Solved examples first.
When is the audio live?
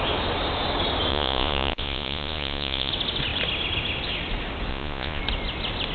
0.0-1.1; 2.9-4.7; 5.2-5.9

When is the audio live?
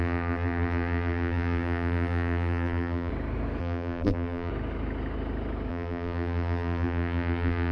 3.1-3.6; 4.5-5.7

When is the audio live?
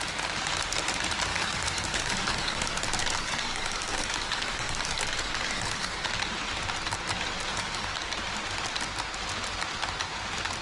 0.0-1.3; 2.6-3.0; 6.1-7.5; 8.1-10.6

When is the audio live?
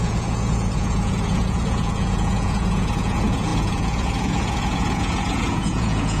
none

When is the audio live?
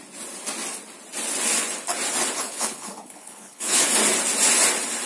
0.0-2.4; 3.9-5.1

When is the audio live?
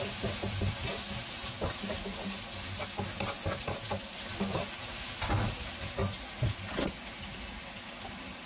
0.0-8.5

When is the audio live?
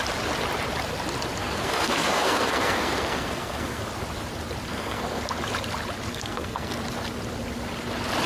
0.0-1.4; 3.8-4.7; 5.2-6.1; 6.8-8.3